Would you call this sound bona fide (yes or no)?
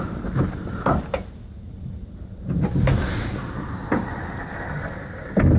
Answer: yes